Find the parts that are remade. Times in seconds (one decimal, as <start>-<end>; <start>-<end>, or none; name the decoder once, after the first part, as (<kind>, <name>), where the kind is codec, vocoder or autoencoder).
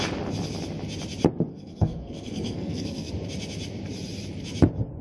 1.5-3.1 (codec, SNAC)